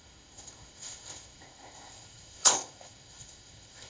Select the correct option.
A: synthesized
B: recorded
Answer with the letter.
A